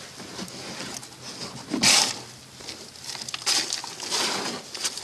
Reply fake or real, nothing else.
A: real